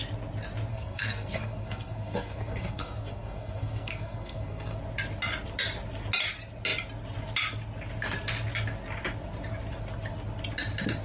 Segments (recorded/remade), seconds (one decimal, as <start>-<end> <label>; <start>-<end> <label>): 0.0-0.7 recorded; 0.7-4.8 remade; 4.8-11.0 recorded